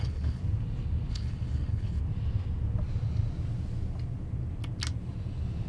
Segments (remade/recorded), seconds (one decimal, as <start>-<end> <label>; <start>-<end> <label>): 0.0-0.4 remade; 0.4-1.1 recorded; 1.1-2.0 remade; 2.0-5.7 recorded